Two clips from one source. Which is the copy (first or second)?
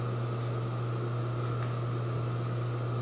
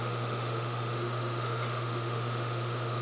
second